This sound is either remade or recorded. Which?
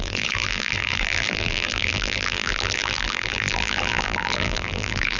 remade